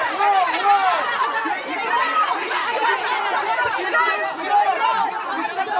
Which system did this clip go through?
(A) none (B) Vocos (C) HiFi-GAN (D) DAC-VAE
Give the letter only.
A